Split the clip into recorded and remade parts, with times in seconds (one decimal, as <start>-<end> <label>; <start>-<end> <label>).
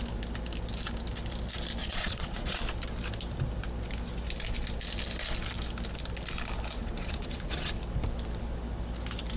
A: 0.0-1.8 recorded; 1.8-2.6 remade; 2.6-6.8 recorded; 6.8-7.7 remade; 7.7-9.4 recorded